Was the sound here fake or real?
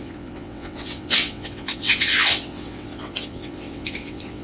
fake